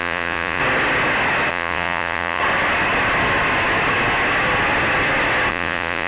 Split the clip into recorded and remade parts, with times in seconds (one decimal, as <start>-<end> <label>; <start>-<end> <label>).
0.0-0.6 remade; 0.6-1.5 recorded; 1.5-2.4 remade; 2.4-5.5 recorded; 5.5-6.1 remade